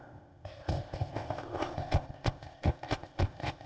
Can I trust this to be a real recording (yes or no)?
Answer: no